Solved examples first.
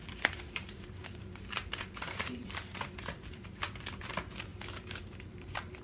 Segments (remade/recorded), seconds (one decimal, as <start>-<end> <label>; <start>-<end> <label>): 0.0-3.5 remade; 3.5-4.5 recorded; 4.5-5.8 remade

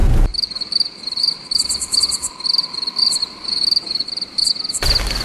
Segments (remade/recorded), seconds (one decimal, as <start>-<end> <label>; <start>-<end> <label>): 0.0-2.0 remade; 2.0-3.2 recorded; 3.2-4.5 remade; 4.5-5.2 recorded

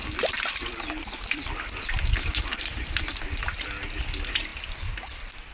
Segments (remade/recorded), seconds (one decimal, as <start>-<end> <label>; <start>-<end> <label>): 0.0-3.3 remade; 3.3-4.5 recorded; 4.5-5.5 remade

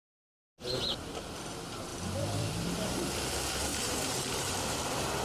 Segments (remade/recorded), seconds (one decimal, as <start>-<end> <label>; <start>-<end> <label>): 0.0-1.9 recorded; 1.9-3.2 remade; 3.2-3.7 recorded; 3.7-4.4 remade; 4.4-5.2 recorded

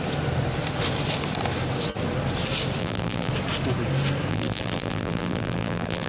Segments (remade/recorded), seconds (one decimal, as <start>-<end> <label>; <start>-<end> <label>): 0.0-2.8 recorded; 2.8-3.3 remade; 3.3-4.3 recorded; 4.3-6.1 remade